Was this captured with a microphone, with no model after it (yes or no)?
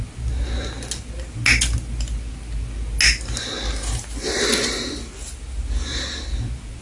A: yes